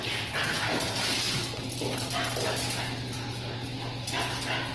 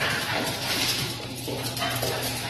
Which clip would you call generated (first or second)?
second